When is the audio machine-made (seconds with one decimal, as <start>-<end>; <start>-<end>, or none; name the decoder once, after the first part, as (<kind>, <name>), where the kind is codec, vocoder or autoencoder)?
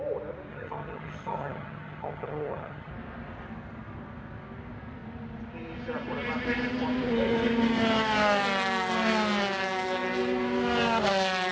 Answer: 0.5-2.9 (vocoder, HiFi-GAN)